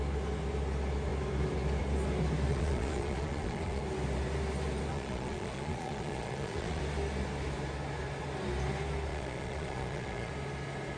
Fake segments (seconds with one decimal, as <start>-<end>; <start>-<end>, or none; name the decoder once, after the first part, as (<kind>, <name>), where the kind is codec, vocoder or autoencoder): 2.5-3.8 (vocoder, Vocos); 4.9-6.8; 9.1-10.3